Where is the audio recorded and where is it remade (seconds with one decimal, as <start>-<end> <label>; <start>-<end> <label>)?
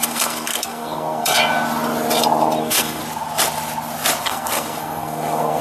0.0-1.4 remade; 1.4-2.6 recorded; 2.6-3.0 remade; 3.0-4.2 recorded; 4.2-5.6 remade